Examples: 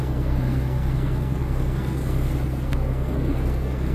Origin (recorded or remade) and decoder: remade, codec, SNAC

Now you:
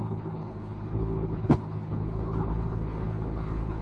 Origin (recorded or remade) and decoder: remade, codec, HILCodec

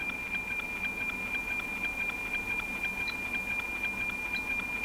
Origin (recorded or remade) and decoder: recorded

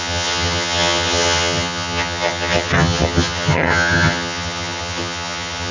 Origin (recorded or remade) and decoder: remade, vocoder, HiFi-GAN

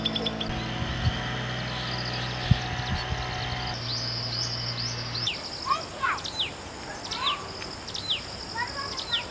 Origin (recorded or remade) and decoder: recorded